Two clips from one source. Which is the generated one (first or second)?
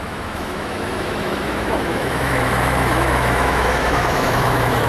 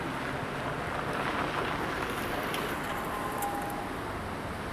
first